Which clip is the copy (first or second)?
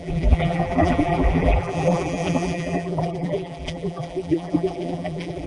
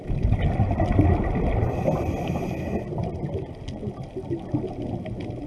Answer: first